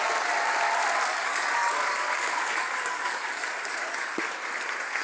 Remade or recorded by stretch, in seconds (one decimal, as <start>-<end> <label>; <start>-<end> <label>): 0.0-1.1 recorded; 1.1-4.1 remade; 4.1-5.0 recorded